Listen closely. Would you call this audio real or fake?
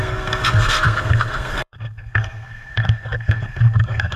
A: fake